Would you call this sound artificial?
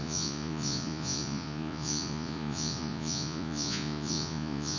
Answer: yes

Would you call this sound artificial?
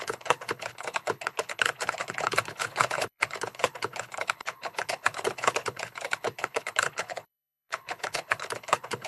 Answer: yes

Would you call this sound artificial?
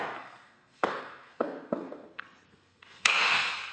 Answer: yes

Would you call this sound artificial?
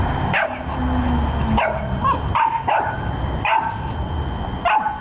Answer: no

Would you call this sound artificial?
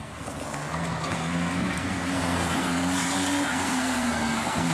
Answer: yes